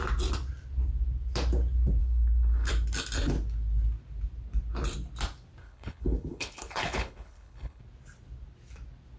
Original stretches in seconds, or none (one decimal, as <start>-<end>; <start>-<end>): 0.0-2.0; 2.7-5.6; 7.8-9.2